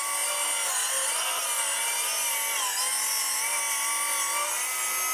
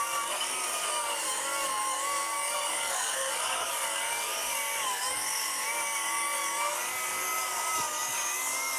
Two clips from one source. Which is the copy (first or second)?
second